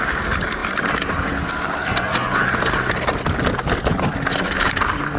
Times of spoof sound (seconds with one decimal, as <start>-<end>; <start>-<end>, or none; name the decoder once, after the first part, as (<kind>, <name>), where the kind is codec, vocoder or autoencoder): 0.6-1.3 (vocoder, BigVGAN v2); 4.3-5.2